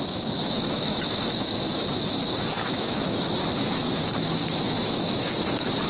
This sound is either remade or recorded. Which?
remade